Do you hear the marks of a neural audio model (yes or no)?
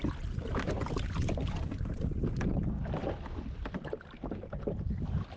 no